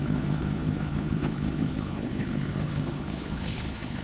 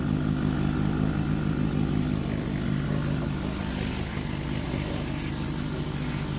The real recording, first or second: second